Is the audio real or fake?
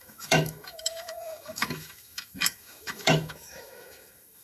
fake